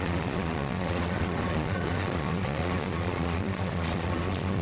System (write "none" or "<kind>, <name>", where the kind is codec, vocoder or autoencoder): vocoder, Vocos